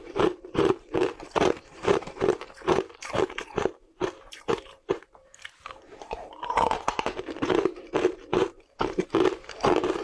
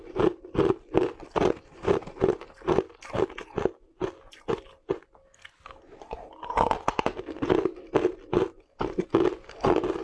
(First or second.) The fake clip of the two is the first